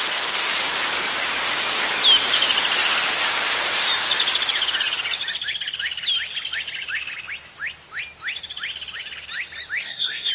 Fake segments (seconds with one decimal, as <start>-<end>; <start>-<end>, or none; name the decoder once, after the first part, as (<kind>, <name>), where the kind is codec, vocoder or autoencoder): 9.8-10.3 (codec, SNAC)